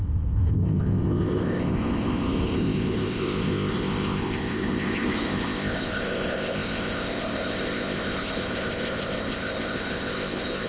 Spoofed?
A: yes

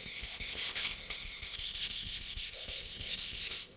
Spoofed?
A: yes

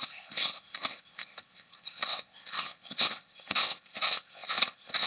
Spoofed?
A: yes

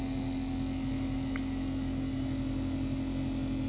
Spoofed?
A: no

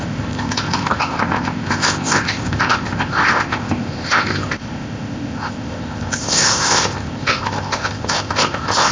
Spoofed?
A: yes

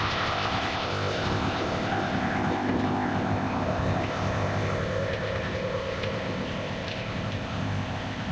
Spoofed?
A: yes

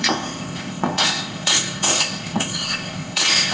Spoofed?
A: yes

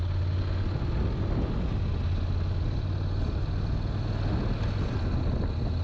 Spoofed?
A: no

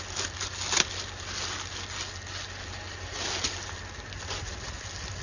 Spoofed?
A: no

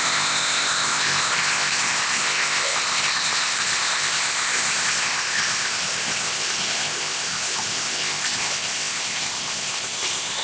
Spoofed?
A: yes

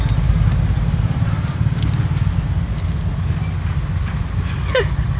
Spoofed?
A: no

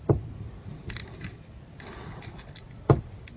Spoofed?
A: no